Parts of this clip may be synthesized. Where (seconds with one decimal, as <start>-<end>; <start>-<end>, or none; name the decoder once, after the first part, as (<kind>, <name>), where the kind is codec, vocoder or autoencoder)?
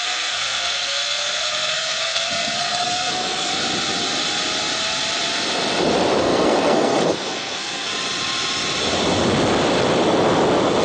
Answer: 0.0-3.5 (codec, SNAC); 6.2-7.9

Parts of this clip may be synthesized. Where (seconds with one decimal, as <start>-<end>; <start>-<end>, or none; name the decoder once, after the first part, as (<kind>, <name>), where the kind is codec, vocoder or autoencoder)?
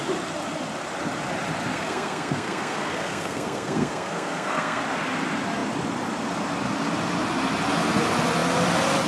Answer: 1.7-4.8 (codec, SNAC)